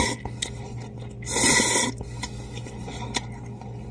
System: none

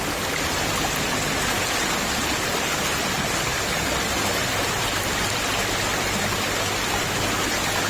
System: none